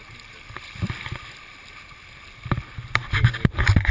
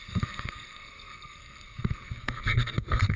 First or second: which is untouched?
first